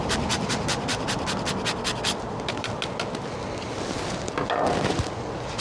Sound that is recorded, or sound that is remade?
recorded